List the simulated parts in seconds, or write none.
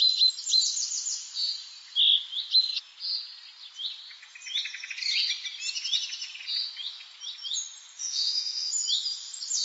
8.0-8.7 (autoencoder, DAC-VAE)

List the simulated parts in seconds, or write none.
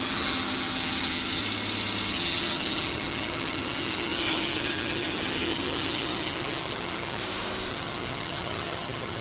0.0-1.4 (vocoder, HiFi-GAN); 2.1-7.2; 7.7-9.2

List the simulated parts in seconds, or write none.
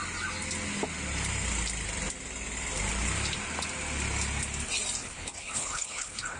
5.0-6.4 (codec, HILCodec)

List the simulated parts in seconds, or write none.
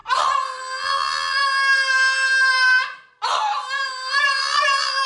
0.0-0.6 (vocoder, BigVGAN v2); 3.4-4.4